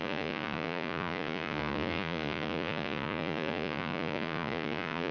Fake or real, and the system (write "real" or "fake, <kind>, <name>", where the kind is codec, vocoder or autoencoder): fake, vocoder, Vocos